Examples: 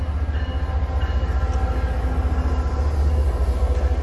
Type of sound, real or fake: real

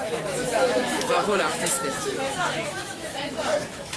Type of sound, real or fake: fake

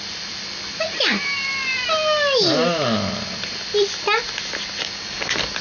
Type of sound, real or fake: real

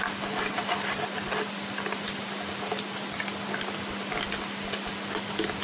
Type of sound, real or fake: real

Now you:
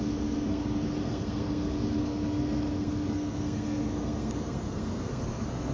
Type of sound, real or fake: fake